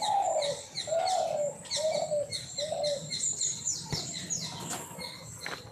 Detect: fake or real real